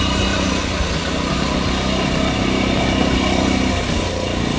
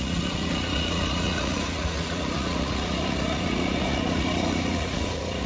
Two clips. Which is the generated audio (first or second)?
second